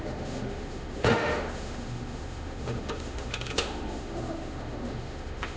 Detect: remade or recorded remade